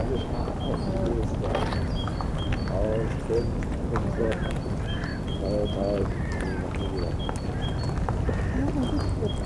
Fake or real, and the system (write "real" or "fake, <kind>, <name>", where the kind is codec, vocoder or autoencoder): real